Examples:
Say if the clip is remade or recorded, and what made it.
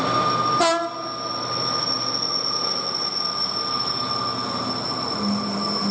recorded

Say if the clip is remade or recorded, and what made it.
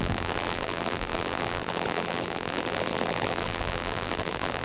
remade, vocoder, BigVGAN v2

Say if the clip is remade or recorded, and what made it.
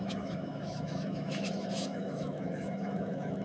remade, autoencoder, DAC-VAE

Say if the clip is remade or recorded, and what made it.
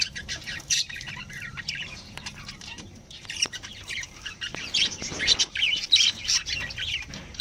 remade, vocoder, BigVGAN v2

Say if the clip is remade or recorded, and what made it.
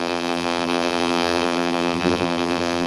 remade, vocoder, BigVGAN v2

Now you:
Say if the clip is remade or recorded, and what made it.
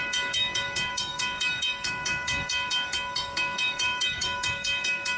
remade, codec, DAC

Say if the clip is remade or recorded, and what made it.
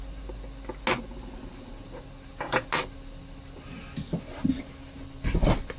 recorded